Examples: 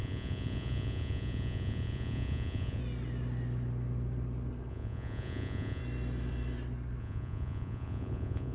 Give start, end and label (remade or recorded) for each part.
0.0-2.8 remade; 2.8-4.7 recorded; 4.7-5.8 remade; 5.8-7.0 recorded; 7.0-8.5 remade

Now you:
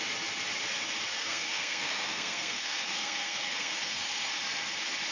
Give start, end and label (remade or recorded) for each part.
0.0-1.2 recorded; 1.2-4.3 remade; 4.3-5.1 recorded

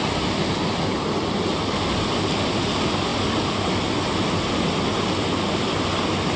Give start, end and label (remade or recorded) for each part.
0.0-6.4 recorded

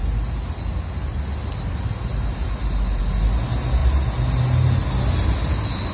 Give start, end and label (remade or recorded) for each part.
0.0-5.9 recorded

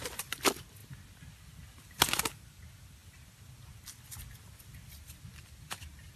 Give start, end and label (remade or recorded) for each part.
0.0-6.2 recorded

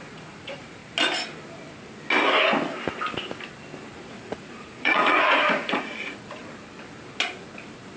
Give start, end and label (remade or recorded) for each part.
0.0-0.8 remade; 0.8-4.0 recorded; 4.0-6.4 remade; 6.4-8.0 recorded

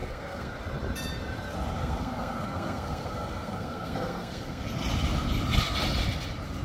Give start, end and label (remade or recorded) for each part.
0.0-0.6 remade; 0.6-1.8 recorded; 1.8-4.7 remade; 4.7-6.6 recorded